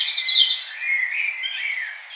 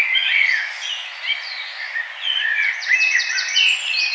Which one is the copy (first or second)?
second